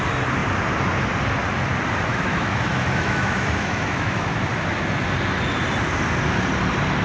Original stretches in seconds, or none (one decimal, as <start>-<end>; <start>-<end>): 0.0-2.1; 4.5-7.0